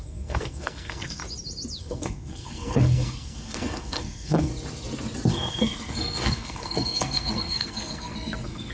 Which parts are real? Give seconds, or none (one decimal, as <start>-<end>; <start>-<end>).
1.2-1.8; 4.5-5.3